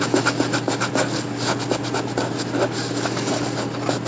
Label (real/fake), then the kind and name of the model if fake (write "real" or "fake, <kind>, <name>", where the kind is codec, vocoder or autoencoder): real